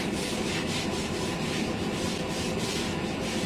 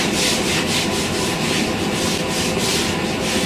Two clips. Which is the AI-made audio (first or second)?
first